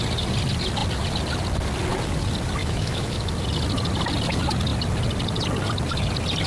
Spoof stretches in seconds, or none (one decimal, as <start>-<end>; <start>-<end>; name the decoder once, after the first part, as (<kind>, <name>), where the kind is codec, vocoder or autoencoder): 2.6-3.3 (autoencoder, DAC-VAE)